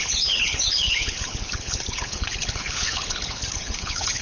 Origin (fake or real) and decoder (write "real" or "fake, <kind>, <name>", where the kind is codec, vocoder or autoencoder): fake, codec, HILCodec